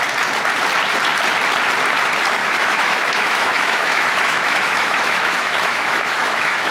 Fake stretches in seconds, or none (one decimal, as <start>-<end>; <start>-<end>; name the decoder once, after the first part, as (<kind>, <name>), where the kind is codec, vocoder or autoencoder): 2.4-6.7 (autoencoder, DAC-VAE)

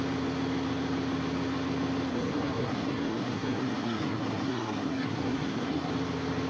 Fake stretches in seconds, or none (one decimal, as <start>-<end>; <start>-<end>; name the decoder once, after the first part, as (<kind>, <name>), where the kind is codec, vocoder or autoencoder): 2.1-5.9 (codec, SNAC)

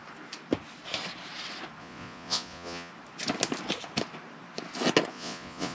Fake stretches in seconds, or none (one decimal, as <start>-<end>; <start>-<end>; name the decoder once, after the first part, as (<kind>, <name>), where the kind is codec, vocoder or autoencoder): 1.8-2.9 (vocoder, Vocos); 5.1-5.7

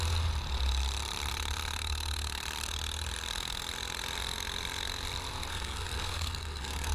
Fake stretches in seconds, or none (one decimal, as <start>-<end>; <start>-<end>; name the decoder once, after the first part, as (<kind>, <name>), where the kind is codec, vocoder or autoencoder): 5.5-6.9 (codec, SNAC)

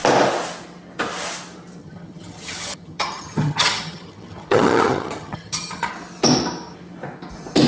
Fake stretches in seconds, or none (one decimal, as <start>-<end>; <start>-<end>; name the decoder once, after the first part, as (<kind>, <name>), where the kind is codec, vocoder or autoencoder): 1.8-5.9 (vocoder, HiFi-GAN)

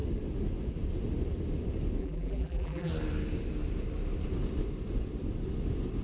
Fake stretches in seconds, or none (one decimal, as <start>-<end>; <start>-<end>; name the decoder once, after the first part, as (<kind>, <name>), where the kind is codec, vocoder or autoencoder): 2.0-2.9 (vocoder, BigVGAN v2)